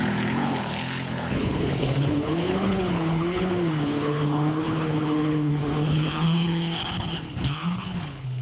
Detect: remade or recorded remade